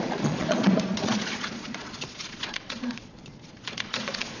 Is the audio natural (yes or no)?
no